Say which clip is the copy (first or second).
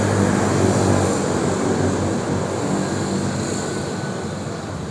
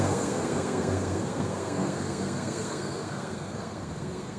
second